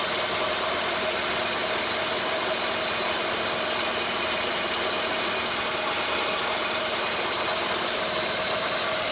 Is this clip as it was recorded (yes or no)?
yes